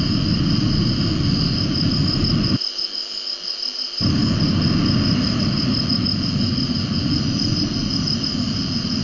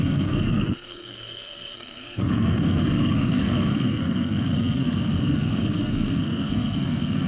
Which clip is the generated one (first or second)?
second